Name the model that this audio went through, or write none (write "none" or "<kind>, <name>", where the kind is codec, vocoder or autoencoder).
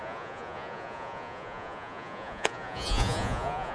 vocoder, Vocos